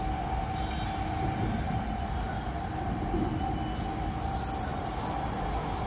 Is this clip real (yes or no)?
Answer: yes